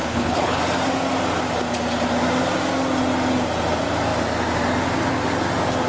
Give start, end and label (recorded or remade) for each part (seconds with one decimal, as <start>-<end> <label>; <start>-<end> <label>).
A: 0.0-0.6 remade; 0.6-5.9 recorded